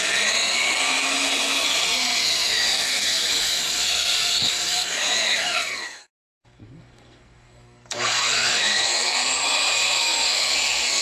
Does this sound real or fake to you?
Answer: fake